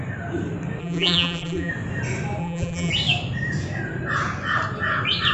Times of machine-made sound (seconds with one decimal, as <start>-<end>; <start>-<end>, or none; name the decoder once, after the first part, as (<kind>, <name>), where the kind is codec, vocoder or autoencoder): 0.8-1.7 (vocoder, BigVGAN v2); 2.4-2.9